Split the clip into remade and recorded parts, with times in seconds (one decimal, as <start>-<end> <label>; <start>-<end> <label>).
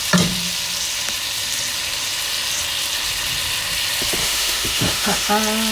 0.0-4.2 recorded; 4.2-5.3 remade; 5.3-5.7 recorded